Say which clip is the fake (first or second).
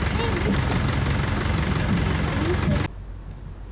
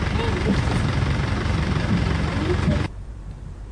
second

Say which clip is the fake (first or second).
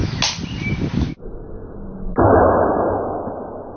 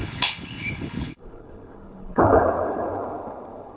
second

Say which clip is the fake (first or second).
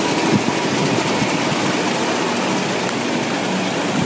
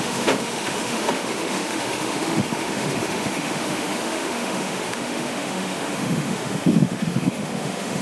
second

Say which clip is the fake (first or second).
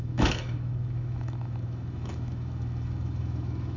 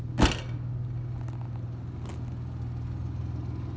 first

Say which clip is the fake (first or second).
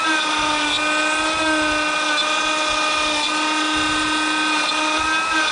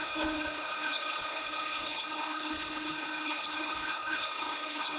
second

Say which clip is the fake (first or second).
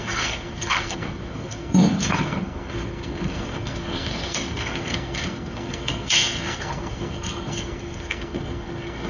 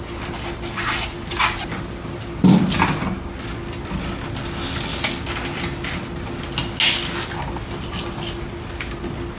first